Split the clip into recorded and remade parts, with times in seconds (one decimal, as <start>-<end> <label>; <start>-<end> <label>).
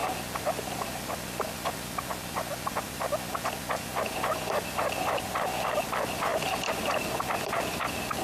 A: 0.0-8.2 recorded